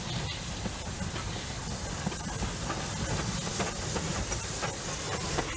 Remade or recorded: recorded